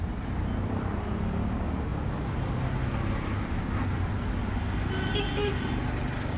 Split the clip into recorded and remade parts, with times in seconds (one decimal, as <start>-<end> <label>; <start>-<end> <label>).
0.0-6.4 recorded